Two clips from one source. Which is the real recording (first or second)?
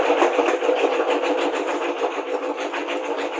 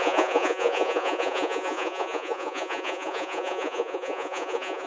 first